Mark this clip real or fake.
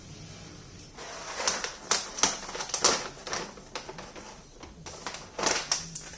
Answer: real